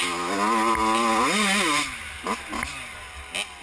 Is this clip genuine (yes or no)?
yes